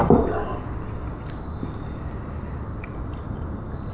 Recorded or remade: recorded